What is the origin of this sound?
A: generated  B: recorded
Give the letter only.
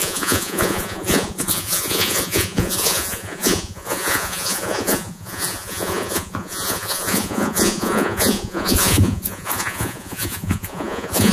A